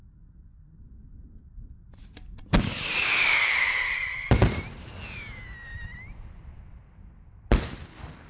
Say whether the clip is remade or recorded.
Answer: recorded